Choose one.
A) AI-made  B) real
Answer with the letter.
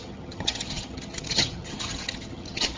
A